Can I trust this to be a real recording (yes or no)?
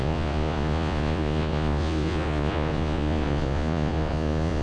no